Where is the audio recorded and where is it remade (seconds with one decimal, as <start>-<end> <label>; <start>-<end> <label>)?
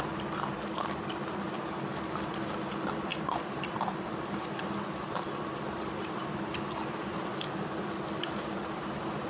0.0-9.3 recorded